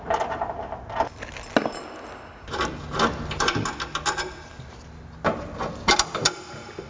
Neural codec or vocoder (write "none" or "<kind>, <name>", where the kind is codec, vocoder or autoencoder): none